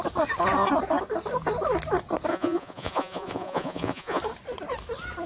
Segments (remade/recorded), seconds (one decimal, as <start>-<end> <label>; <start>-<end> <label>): 0.0-2.3 recorded; 2.3-4.2 remade; 4.2-5.3 recorded